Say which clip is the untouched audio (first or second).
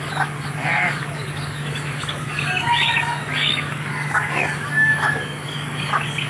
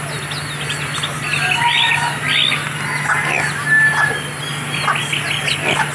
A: second